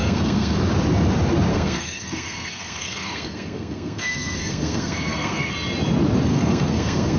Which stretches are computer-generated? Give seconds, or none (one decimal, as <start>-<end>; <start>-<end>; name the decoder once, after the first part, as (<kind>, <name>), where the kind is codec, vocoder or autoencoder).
0.0-0.6 (codec, SNAC); 1.5-5.5; 6.3-7.2